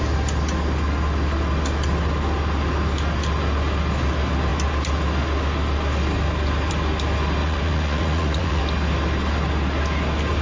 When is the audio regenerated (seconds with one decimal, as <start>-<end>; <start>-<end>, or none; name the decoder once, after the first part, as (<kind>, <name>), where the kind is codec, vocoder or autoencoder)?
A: 7.4-8.6 (vocoder, Vocos)